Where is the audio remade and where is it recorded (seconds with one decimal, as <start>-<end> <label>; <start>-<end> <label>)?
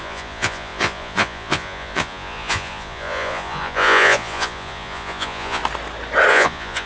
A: 0.0-5.6 remade; 5.6-6.3 recorded; 6.3-6.9 remade